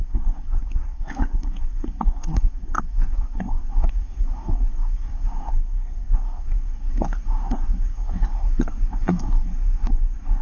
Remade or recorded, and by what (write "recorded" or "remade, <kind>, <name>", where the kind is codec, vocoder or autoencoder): remade, codec, SNAC